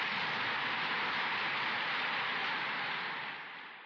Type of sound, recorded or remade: remade